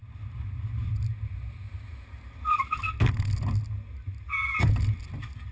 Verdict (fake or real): real